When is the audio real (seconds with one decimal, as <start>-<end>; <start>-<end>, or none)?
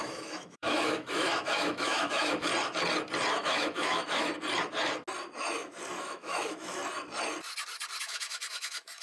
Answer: 2.5-3.3; 4.3-6.0; 6.8-8.0